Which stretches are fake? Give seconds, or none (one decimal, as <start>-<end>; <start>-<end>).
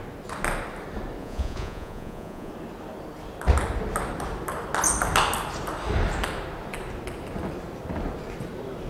1.2-2.5